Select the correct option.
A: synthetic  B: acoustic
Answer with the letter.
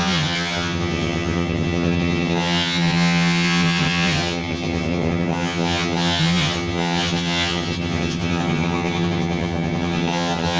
A